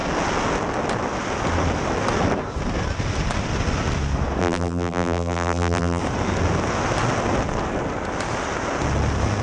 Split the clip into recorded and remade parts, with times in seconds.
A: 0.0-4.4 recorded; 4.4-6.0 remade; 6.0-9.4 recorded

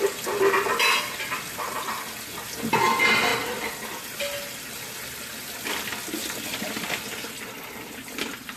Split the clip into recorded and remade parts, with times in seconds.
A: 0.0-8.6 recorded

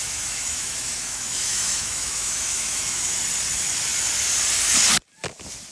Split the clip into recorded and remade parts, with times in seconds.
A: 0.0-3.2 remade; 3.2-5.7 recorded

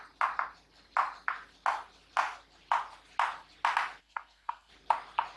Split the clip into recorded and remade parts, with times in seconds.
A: 0.0-4.0 recorded; 4.0-4.7 remade; 4.7-5.4 recorded

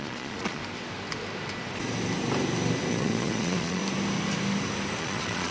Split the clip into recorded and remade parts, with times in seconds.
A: 0.0-0.6 remade; 0.6-2.9 recorded; 2.9-3.8 remade; 3.8-5.0 recorded; 5.0-5.5 remade

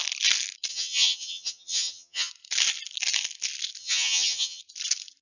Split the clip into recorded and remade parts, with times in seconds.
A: 0.0-0.7 recorded; 0.7-2.3 remade; 2.3-3.8 recorded; 3.8-4.6 remade; 4.6-5.2 recorded

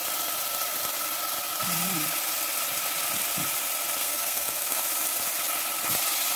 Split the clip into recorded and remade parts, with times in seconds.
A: 0.0-4.0 recorded; 4.0-4.8 remade; 4.8-6.4 recorded